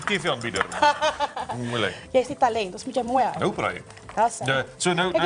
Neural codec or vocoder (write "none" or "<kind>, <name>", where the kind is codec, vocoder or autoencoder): vocoder, BigVGAN v2